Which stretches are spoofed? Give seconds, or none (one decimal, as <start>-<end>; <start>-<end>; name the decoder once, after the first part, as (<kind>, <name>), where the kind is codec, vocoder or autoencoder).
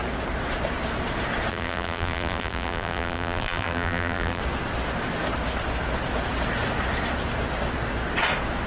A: 1.5-4.4 (vocoder, BigVGAN v2)